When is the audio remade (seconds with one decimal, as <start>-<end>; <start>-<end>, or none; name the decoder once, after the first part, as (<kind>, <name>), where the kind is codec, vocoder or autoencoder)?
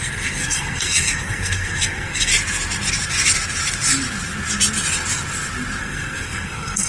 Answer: 0.0-2.3 (codec, SNAC); 5.8-6.9